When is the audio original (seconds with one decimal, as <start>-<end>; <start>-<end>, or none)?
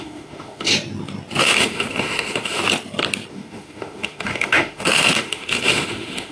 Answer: 0.7-1.4; 2.6-3.3